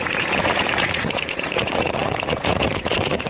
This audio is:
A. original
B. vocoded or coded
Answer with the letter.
B